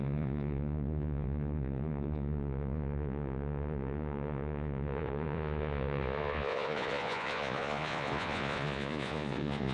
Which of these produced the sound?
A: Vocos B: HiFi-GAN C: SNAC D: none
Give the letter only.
A